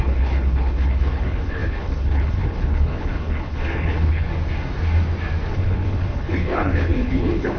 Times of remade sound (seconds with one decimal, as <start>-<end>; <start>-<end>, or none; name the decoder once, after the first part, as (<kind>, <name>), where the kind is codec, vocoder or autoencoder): 0.0-4.3 (codec, HILCodec); 5.5-7.6